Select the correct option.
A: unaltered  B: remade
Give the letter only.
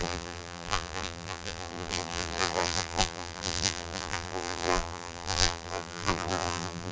B